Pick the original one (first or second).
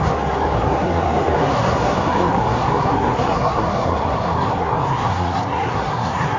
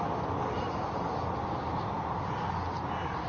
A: second